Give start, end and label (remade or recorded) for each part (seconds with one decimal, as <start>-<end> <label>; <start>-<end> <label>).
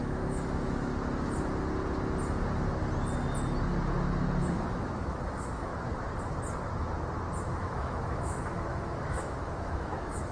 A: 0.0-0.9 remade; 0.9-4.4 recorded; 4.4-5.7 remade; 5.7-7.4 recorded; 7.4-10.3 remade